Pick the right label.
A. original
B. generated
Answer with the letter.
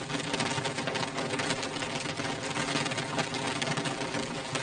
A